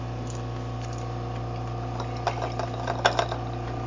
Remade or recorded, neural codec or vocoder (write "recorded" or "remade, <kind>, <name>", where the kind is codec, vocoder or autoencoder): recorded